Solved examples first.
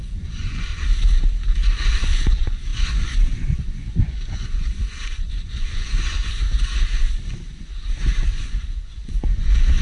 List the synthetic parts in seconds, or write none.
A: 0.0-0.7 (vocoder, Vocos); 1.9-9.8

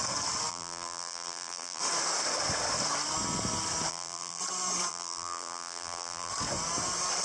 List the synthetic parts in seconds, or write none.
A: 0.5-1.8 (vocoder, BigVGAN v2); 3.9-4.4; 4.9-6.3

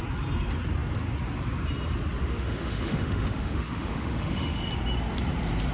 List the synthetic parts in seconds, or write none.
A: 2.2-4.7 (autoencoder, DAC-VAE)

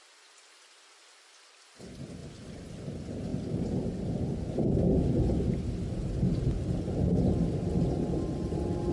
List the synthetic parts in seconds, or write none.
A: none